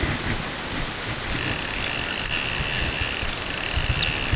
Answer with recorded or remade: recorded